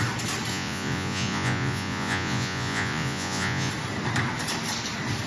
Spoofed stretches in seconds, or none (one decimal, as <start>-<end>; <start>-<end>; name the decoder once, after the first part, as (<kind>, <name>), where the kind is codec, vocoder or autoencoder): 0.5-3.7 (vocoder, Vocos)